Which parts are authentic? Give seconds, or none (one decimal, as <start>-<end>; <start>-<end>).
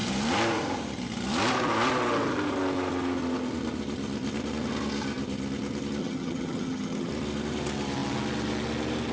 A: 0.0-6.0; 7.1-9.1